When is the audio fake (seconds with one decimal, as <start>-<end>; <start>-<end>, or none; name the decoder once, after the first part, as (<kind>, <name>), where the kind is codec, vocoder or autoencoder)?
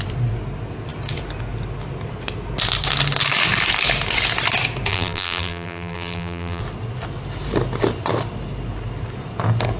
4.9-6.6 (vocoder, BigVGAN v2)